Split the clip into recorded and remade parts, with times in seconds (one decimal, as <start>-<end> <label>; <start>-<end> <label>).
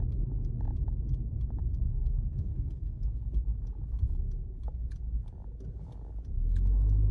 0.0-1.6 recorded; 1.6-3.2 remade; 3.2-7.1 recorded